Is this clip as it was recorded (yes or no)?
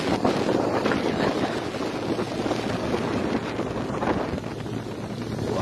yes